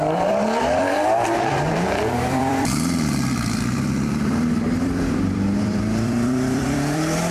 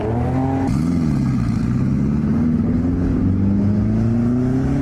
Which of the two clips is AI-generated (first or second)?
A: first